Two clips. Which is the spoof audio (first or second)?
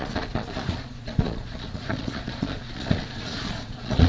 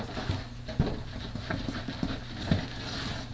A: first